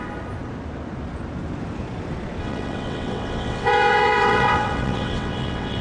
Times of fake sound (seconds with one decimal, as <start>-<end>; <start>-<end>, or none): 2.4-5.8